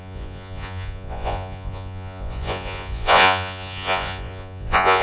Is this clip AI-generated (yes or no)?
yes